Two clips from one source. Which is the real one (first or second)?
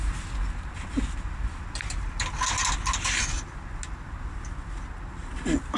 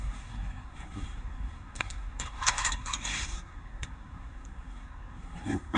first